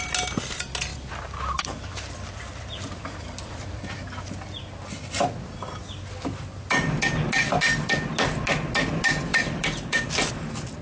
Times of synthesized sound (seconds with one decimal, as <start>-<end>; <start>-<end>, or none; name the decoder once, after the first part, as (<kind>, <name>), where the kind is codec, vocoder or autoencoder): 0.9-3.9 (vocoder, BigVGAN v2); 9.3-10.0